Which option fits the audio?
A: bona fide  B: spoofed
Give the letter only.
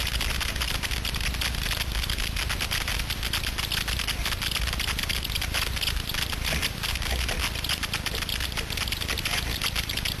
A